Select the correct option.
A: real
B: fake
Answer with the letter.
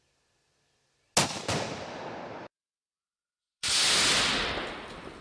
A